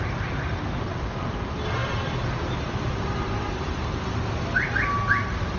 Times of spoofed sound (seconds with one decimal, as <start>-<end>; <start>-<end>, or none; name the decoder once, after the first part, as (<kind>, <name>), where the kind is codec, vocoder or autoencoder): none